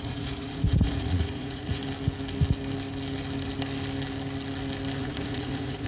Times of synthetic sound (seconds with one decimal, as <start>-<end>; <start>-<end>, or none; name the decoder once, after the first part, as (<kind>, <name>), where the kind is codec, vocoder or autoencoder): 0.0-1.8 (vocoder, Vocos); 5.0-5.9